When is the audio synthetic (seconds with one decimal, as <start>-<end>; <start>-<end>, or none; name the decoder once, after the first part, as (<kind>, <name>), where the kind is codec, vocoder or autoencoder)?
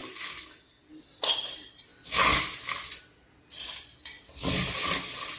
0.0-0.8 (codec, DAC)